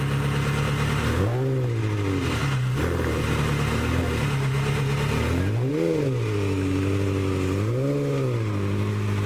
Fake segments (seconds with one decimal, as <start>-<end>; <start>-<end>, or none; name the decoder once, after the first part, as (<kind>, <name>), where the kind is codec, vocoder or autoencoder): none